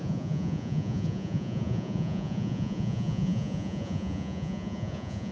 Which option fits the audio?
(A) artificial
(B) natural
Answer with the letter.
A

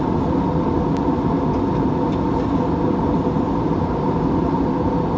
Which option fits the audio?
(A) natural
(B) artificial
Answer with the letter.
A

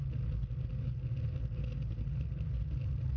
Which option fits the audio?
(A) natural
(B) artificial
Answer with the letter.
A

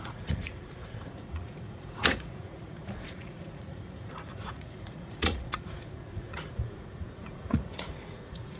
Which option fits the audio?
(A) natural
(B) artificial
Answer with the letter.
B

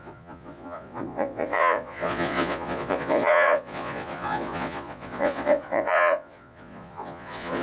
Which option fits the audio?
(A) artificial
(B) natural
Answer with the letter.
A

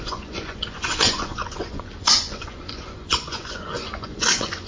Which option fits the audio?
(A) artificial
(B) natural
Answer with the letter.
A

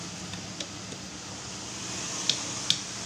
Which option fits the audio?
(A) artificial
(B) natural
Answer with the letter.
B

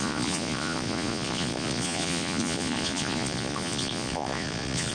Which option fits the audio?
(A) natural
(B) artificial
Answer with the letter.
B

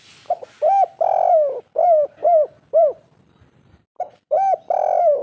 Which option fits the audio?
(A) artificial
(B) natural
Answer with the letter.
B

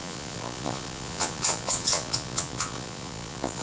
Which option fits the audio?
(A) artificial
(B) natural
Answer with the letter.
A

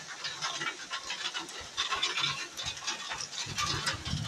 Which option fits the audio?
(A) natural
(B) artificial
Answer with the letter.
A